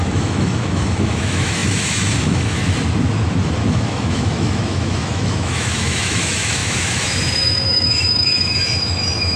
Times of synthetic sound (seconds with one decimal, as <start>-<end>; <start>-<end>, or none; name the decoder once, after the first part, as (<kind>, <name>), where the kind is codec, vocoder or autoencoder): 0.0-2.6 (autoencoder, DAC-VAE); 3.7-9.4